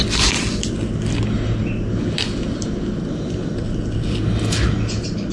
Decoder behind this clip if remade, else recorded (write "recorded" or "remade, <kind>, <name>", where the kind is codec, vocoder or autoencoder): recorded